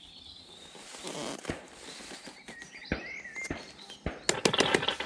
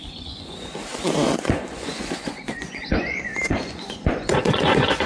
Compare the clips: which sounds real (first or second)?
first